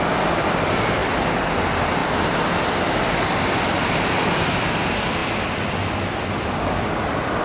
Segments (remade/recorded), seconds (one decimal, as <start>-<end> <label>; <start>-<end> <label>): 0.0-7.4 recorded